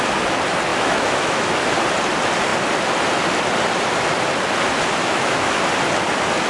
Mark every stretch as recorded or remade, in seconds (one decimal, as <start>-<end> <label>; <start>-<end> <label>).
0.0-0.7 recorded; 0.7-1.5 remade; 1.5-5.0 recorded; 5.0-5.6 remade; 5.6-6.5 recorded